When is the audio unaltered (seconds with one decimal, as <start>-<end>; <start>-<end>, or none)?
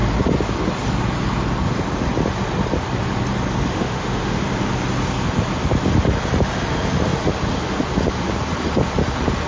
0.0-3.7; 4.4-9.5